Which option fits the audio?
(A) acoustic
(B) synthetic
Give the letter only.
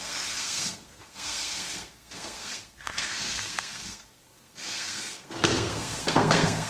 B